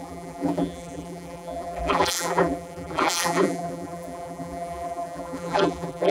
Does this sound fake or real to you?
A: fake